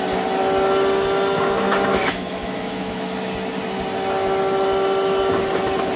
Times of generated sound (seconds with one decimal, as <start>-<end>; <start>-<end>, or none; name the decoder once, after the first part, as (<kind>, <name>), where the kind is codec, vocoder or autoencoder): 2.0-3.1 (autoencoder, DAC-VAE)

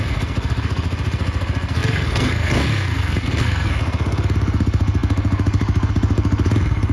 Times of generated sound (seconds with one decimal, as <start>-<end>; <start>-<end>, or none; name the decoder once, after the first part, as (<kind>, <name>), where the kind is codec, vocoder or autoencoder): 0.0-6.9 (codec, SNAC)

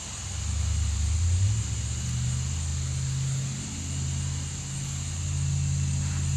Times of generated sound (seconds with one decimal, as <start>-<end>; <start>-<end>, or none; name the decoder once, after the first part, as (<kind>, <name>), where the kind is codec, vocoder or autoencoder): none

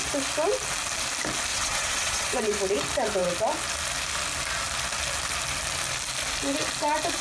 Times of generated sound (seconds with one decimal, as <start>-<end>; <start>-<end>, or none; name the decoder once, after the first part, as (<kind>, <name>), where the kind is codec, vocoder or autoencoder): 1.5-2.4 (vocoder, WaveNeXt)

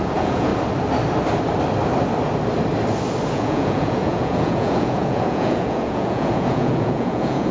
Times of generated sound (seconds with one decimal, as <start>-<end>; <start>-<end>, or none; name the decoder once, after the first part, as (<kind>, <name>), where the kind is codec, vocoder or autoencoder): 0.0-0.5 (vocoder, Vocos); 3.3-7.5

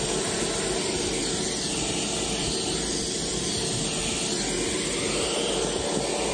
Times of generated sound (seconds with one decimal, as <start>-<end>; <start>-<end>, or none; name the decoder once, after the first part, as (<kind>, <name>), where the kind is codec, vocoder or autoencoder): none